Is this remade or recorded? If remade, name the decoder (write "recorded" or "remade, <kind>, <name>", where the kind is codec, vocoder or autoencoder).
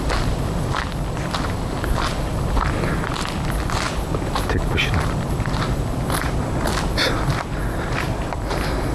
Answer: recorded